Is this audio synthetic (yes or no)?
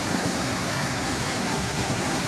yes